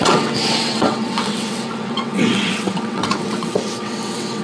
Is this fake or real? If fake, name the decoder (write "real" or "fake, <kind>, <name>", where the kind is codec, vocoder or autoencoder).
fake, vocoder, WaveNeXt